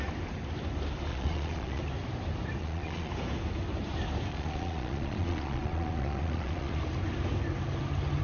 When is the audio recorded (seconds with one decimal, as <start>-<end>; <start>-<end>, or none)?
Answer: 0.0-1.1; 1.8-2.6; 3.1-4.3; 6.8-8.2